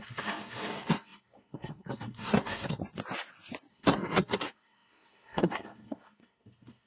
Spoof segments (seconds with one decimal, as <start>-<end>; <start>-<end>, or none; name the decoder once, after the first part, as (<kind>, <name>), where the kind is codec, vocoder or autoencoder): 0.0-2.8 (codec, SNAC); 3.7-6.9